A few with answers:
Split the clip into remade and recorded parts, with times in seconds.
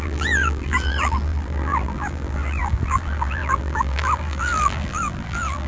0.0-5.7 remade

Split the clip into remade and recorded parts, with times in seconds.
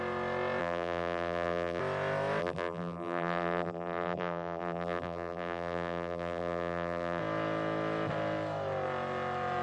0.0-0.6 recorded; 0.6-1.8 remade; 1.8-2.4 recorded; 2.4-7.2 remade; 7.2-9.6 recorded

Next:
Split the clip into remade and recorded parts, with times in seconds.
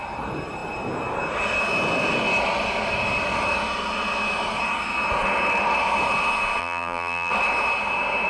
0.0-6.6 recorded; 6.6-7.3 remade; 7.3-8.3 recorded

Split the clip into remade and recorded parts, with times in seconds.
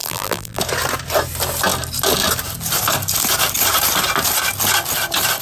0.0-0.6 remade; 0.6-5.4 recorded